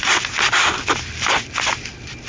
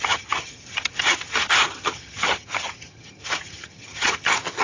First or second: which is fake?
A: second